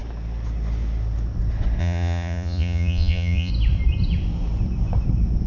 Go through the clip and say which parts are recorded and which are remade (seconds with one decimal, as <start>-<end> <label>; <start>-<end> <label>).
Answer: 0.0-1.8 recorded; 1.8-3.5 remade; 3.5-5.5 recorded